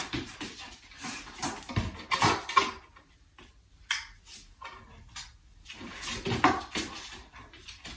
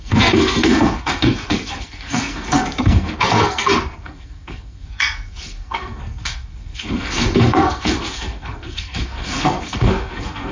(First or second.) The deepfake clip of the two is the second